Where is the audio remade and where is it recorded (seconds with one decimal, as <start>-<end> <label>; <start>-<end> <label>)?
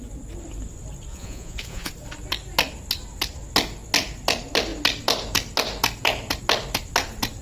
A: 0.0-1.1 recorded; 1.1-1.9 remade; 1.9-7.4 recorded